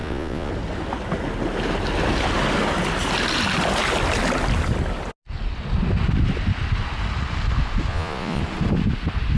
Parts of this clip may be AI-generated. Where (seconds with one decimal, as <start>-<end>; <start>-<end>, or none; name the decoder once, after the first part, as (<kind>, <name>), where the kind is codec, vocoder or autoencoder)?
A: 0.0-0.5 (vocoder, Vocos); 7.9-8.4